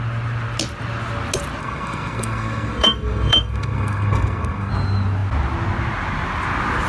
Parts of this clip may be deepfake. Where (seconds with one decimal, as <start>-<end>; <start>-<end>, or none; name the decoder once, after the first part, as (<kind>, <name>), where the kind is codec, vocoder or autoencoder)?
1.6-4.7 (codec, SNAC)